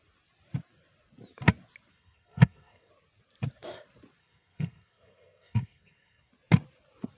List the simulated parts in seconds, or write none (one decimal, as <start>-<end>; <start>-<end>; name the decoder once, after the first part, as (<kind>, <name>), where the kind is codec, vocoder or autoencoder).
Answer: 1.9-2.9 (codec, SNAC); 4.2-6.3